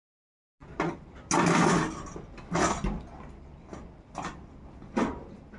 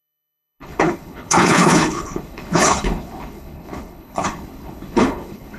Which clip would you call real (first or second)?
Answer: first